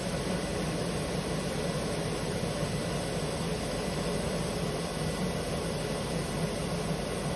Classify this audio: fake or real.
fake